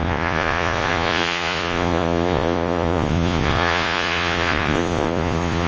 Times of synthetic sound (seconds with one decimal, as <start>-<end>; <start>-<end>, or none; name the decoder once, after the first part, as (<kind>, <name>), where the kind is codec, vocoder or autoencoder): 0.0-5.7 (vocoder, Vocos)